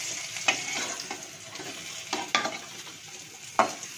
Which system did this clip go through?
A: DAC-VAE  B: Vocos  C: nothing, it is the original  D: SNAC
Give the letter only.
C